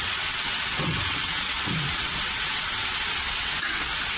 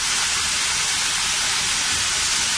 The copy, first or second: first